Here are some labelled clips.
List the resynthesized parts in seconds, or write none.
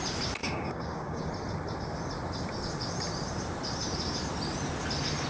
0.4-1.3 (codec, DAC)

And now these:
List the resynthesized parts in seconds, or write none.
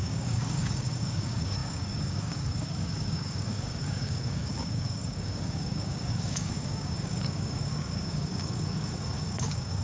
0.0-9.8 (codec, DAC)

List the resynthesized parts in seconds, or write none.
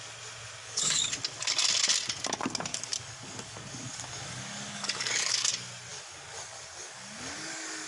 0.6-1.1 (codec, DAC); 2.7-5.5; 5.9-7.9